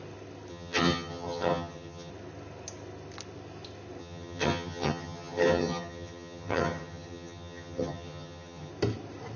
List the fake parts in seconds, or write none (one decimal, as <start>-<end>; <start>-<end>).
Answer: 0.5-2.1; 4.0-8.7